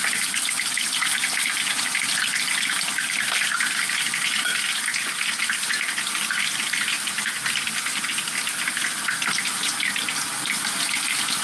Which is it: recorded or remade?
recorded